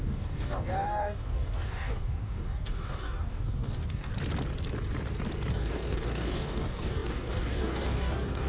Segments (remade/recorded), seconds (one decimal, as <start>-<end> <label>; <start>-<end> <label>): 0.0-4.1 remade; 4.1-5.5 recorded; 5.5-8.5 remade